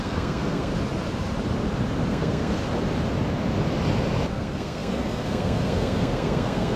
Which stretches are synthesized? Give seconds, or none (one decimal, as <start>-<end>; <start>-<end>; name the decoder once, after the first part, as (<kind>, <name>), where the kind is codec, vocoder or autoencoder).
0.0-0.7 (codec, SNAC); 2.1-2.6; 4.3-6.8